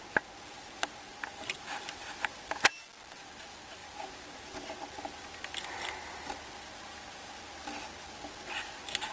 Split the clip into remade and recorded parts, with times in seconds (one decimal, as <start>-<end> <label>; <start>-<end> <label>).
0.0-9.1 recorded